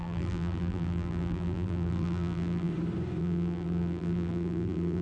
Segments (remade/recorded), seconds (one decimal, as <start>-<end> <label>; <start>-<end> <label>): 0.0-2.7 remade; 2.7-3.2 recorded; 3.2-5.0 remade